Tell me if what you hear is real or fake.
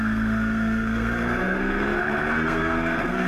fake